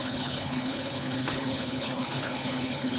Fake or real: fake